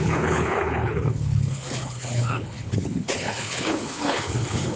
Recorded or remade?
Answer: remade